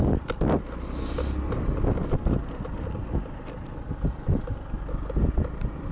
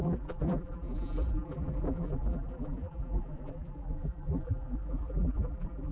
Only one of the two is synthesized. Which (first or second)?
second